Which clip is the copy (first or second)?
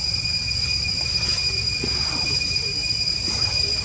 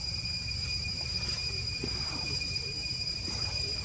second